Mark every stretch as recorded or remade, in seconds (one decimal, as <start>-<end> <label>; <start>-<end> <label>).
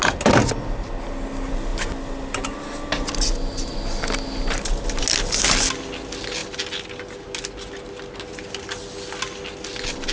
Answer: 0.0-10.1 recorded